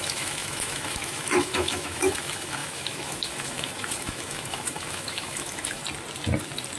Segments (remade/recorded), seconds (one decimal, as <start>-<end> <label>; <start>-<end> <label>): 0.0-5.8 remade; 5.8-6.8 recorded